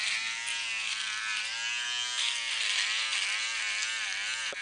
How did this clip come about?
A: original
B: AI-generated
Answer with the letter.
A